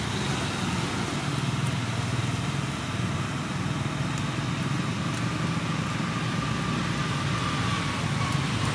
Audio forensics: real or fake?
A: real